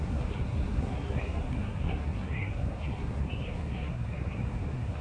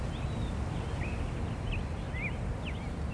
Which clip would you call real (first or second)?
second